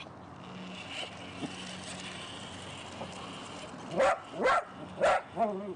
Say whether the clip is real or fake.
real